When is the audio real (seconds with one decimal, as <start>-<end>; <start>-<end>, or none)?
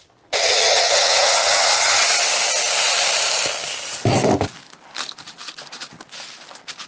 0.0-0.4; 2.0-6.9